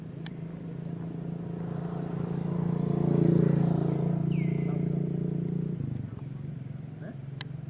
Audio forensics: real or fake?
real